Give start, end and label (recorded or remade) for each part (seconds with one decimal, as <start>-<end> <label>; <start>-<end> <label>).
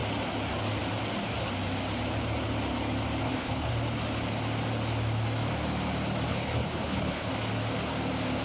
0.0-3.2 recorded; 3.2-3.7 remade; 3.7-6.3 recorded; 6.3-7.3 remade; 7.3-8.4 recorded